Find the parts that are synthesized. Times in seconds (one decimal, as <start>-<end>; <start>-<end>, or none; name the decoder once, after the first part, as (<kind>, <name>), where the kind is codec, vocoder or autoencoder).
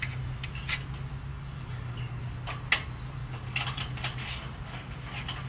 1.3-2.2 (codec, DAC); 3.2-3.8